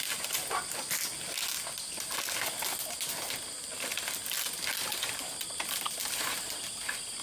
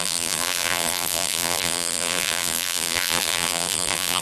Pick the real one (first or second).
first